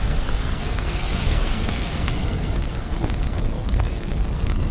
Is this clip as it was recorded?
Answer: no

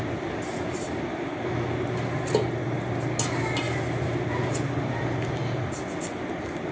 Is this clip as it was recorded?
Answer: yes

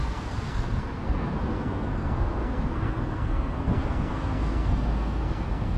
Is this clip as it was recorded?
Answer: no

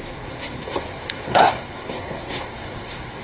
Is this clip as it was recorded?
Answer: no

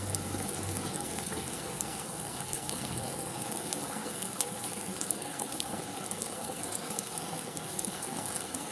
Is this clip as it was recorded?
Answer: no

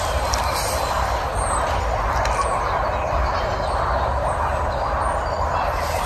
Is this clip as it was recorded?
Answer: yes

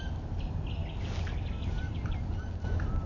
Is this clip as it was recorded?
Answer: yes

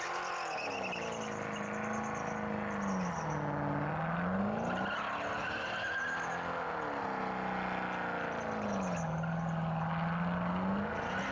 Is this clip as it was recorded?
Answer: yes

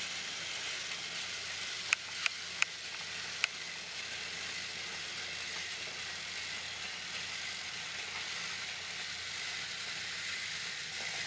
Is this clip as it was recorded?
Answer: yes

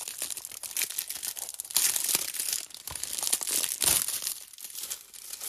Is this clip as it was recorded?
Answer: yes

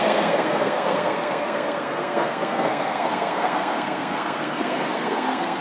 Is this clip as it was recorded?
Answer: no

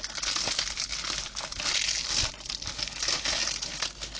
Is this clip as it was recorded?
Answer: yes